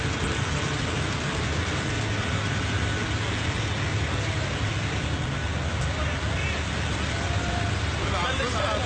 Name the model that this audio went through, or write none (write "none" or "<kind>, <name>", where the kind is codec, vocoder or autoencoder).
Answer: none